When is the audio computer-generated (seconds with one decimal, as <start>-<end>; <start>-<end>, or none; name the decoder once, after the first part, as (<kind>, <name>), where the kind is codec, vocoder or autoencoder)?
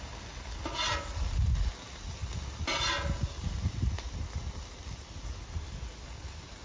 none